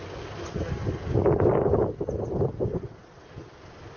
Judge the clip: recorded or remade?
recorded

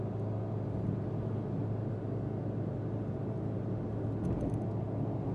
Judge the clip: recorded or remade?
recorded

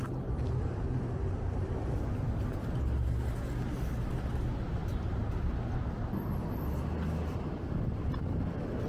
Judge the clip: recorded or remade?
recorded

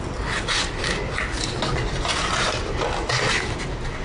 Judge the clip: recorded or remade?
recorded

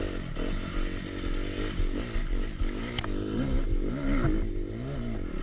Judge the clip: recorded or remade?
recorded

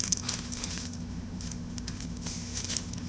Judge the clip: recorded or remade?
remade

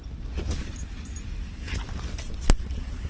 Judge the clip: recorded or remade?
recorded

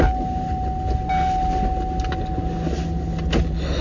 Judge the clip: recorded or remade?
recorded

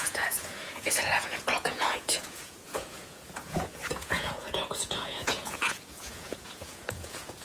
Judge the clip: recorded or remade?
remade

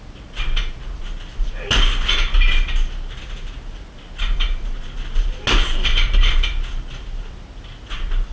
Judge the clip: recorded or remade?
recorded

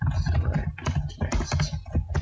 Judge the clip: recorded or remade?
recorded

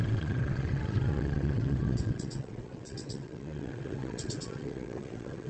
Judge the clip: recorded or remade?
remade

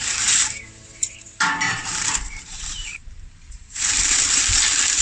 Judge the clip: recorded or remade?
remade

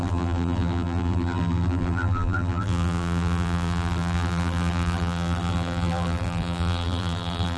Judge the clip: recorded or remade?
remade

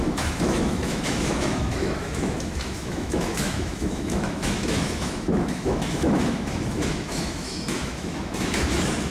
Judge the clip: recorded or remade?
remade